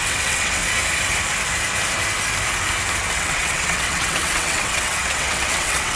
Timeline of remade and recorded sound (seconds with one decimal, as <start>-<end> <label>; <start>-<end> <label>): 0.0-0.6 remade; 0.6-3.1 recorded; 3.1-6.0 remade